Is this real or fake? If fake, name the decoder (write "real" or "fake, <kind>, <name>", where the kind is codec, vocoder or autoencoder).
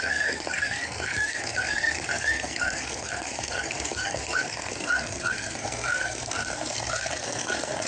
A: fake, codec, SNAC